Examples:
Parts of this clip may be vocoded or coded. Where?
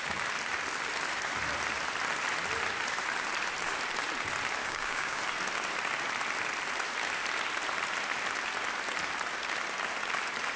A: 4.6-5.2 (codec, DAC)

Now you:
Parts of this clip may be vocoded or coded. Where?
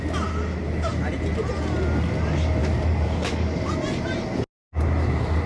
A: 2.6-3.7 (codec, DAC)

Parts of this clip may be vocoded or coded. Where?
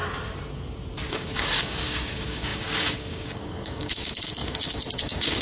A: 1.1-5.4 (codec, DAC)